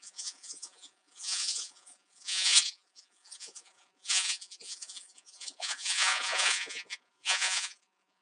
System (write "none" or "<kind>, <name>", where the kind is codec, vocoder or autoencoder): vocoder, Vocos